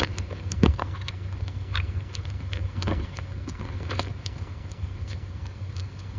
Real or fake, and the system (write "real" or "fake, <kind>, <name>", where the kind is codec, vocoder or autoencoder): fake, codec, SNAC